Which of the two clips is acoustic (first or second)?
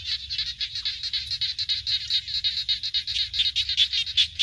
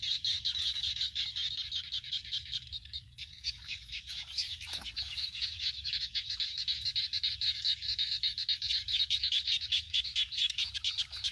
first